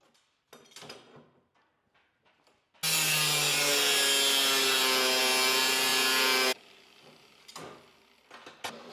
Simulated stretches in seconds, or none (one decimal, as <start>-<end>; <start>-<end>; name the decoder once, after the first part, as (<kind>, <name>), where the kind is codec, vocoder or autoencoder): none